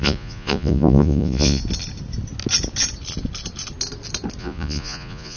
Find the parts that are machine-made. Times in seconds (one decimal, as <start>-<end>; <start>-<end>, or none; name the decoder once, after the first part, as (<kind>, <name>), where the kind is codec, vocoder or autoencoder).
0.0-1.6 (vocoder, Vocos); 4.4-5.4